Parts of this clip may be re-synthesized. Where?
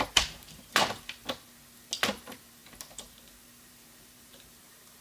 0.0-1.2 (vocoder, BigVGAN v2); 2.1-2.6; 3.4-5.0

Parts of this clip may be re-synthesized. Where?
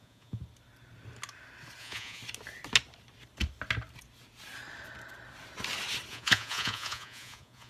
0.0-0.4 (vocoder, Vocos); 1.8-2.2; 6.1-7.7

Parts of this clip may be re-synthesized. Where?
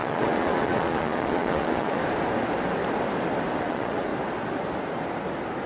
0.0-2.0 (vocoder, Vocos); 3.6-4.1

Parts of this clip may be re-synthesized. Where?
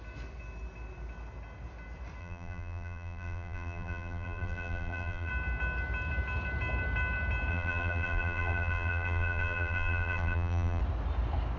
2.2-5.3 (vocoder, BigVGAN v2); 7.5-10.8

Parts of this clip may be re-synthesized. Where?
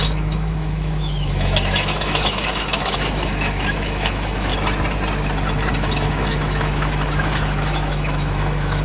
0.0-4.5 (autoencoder, DAC-VAE); 5.7-8.8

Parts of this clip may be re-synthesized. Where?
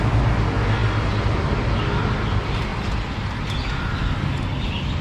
none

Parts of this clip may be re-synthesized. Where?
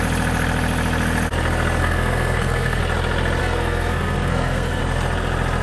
1.8-2.8 (codec, SNAC); 3.4-4.8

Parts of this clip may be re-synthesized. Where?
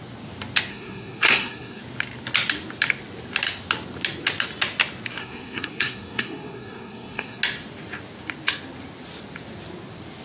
0.7-1.8 (codec, SNAC); 5.2-7.4